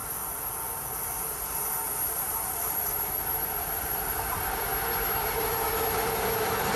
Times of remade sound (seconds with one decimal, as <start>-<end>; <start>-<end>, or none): 2.2-4.7